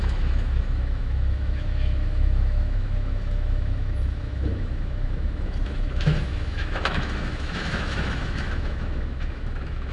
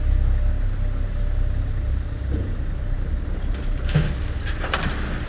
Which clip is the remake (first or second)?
first